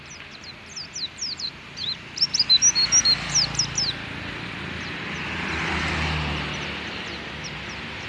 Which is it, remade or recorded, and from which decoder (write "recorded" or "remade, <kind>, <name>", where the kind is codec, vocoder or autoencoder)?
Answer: recorded